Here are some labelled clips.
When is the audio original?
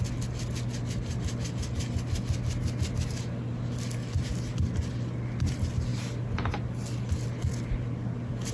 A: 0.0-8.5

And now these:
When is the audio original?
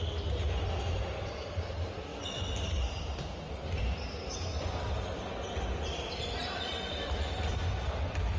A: 0.0-8.4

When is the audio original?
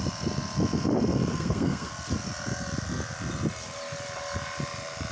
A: 0.0-1.3; 1.9-5.1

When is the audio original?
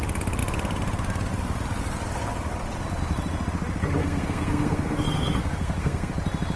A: 0.0-4.0; 6.1-6.6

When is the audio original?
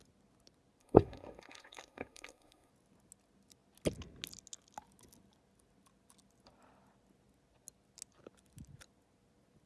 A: 0.0-0.8; 2.7-9.7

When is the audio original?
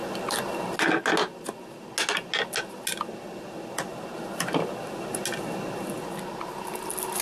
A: 0.0-7.2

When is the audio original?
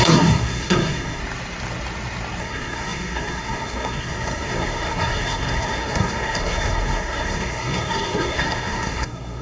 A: 1.2-2.4